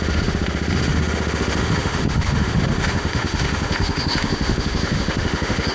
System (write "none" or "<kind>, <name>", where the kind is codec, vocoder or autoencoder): autoencoder, DAC-VAE